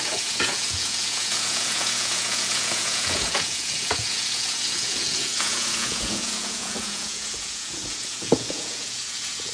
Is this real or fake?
fake